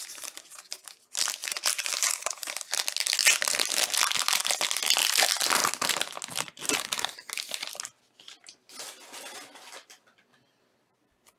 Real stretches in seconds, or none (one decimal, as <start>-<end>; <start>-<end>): 0.0-1.4; 2.5-11.4